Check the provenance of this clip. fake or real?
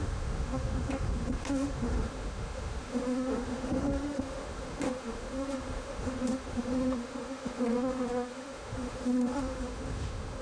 fake